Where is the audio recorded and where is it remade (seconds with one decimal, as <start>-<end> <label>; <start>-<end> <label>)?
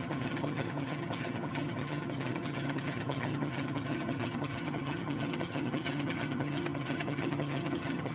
0.0-8.1 remade